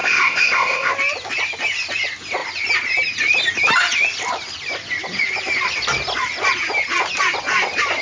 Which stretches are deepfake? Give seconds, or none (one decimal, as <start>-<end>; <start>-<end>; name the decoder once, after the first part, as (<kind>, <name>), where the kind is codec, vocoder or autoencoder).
0.0-0.9 (codec, ZipCodec)